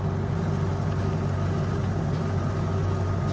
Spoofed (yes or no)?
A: no